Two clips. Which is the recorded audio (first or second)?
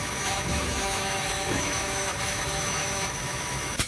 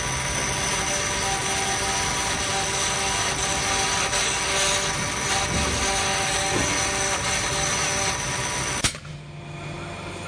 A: second